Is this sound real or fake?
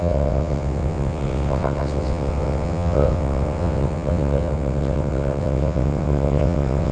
fake